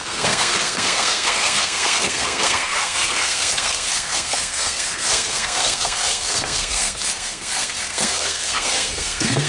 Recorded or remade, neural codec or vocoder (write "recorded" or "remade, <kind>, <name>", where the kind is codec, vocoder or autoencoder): remade, codec, SNAC